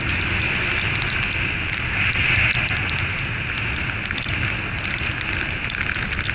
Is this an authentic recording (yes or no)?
yes